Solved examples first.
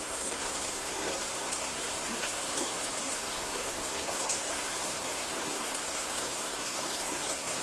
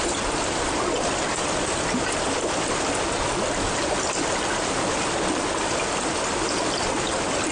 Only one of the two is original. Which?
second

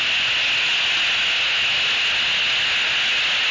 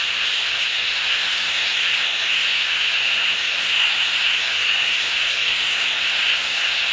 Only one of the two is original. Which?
first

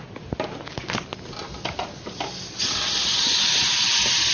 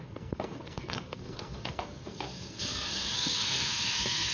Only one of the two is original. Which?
first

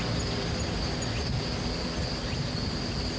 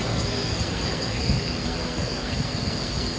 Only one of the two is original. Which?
first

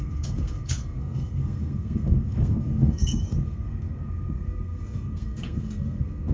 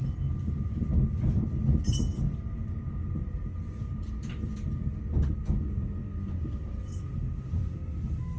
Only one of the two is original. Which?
second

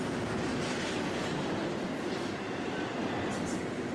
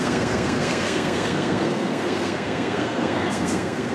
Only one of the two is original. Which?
first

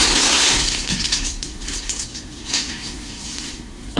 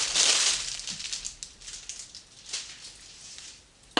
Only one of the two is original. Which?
second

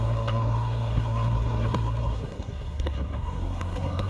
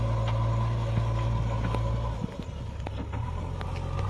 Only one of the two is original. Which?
second